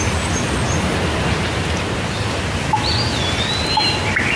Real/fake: real